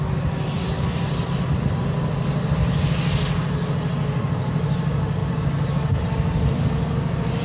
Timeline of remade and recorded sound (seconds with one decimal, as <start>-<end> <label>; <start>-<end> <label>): 0.0-7.4 remade